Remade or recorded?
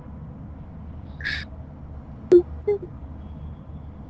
recorded